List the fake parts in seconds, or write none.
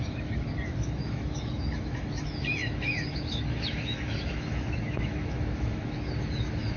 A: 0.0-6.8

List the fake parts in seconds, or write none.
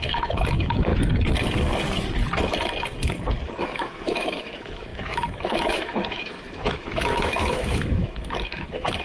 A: 0.0-0.9; 3.6-9.0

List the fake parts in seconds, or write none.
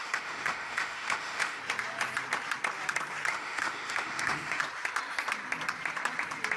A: 0.0-1.6; 3.3-4.6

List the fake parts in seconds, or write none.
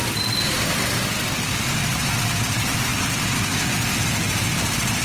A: none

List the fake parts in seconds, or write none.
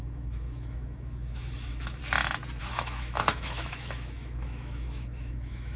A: 0.0-2.0; 2.6-5.8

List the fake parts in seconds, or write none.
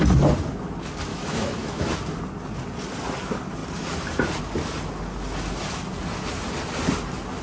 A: 1.1-1.9